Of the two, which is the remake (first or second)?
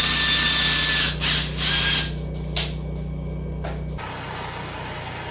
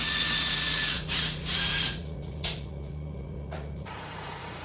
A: second